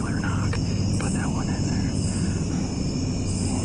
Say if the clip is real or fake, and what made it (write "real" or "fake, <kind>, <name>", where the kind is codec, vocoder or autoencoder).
real